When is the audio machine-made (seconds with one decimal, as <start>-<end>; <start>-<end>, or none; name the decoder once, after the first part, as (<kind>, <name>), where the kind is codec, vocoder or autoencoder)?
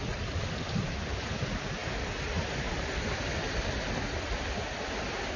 0.0-1.3 (vocoder, BigVGAN v2)